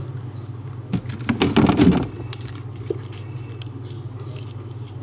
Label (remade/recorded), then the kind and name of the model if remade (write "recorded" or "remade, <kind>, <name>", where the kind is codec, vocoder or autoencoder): recorded